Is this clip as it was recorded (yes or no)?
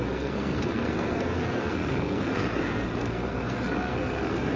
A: no